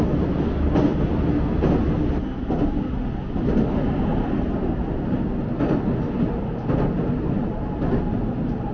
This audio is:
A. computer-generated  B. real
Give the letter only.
B